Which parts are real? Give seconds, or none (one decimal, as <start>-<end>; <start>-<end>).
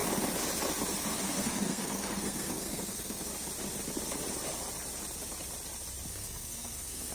0.0-1.0; 3.3-6.1